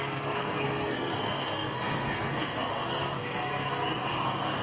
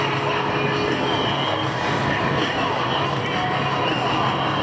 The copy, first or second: first